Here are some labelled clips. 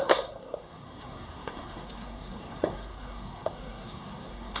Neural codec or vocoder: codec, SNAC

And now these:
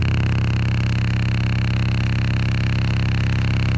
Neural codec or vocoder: none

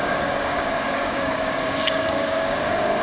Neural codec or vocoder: codec, DAC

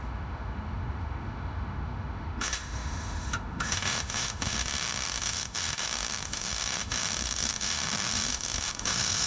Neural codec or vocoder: autoencoder, DAC-VAE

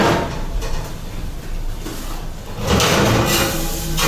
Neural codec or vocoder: none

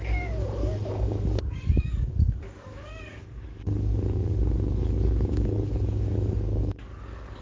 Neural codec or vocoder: codec, DAC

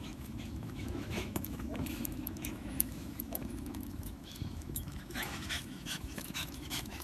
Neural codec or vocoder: autoencoder, DAC-VAE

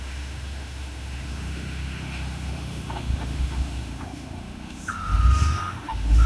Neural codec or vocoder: autoencoder, DAC-VAE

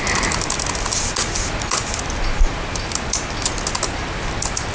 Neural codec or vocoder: none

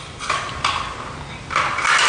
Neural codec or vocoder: none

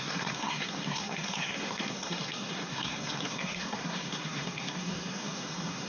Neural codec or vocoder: codec, SNAC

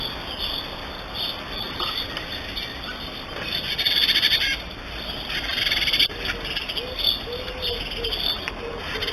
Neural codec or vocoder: none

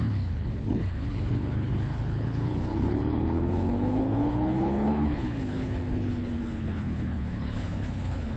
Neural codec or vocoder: codec, HILCodec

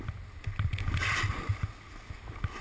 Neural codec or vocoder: none